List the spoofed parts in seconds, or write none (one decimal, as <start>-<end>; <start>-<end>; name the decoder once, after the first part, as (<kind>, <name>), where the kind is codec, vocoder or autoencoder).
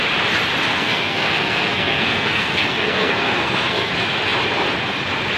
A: 0.7-3.9 (codec, SNAC)